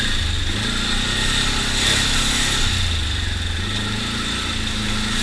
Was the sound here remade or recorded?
recorded